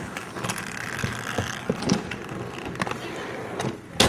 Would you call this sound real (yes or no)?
yes